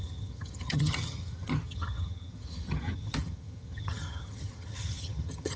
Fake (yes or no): yes